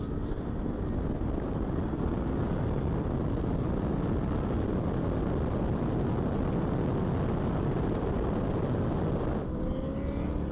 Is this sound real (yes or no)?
yes